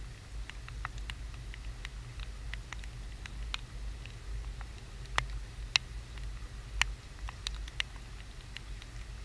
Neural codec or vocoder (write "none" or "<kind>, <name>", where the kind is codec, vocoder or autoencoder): none